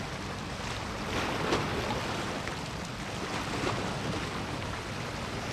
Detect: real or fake real